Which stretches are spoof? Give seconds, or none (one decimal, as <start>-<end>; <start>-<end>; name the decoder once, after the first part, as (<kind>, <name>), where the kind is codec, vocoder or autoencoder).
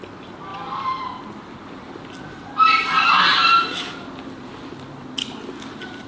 0.5-4.2 (vocoder, BigVGAN v2)